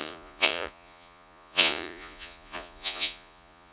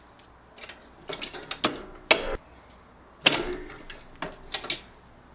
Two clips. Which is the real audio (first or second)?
second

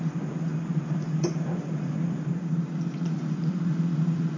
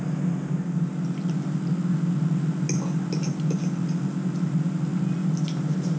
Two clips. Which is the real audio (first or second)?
second